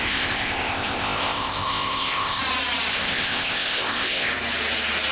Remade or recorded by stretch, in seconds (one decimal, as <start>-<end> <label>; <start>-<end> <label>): 0.0-2.4 remade; 2.4-2.9 recorded; 2.9-4.3 remade; 4.3-5.1 recorded